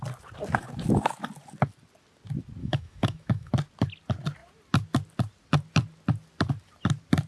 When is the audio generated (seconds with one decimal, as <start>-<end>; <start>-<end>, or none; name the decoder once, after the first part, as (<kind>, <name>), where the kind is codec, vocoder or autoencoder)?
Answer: 2.6-3.5 (autoencoder, DAC-VAE)